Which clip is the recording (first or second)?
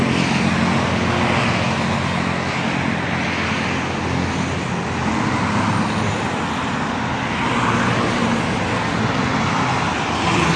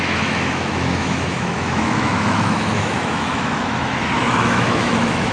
first